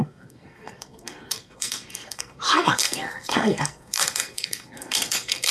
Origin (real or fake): fake